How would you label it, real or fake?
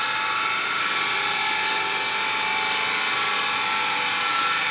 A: real